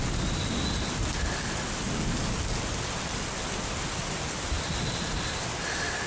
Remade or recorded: recorded